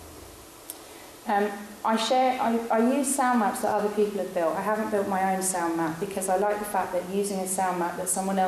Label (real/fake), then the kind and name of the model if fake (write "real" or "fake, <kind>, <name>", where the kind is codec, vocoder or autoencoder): real